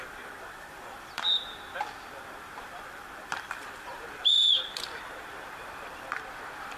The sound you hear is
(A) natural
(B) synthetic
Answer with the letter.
B